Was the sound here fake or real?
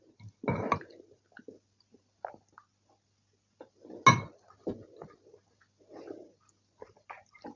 real